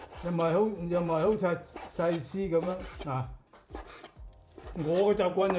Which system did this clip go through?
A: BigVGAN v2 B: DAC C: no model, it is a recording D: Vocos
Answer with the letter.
A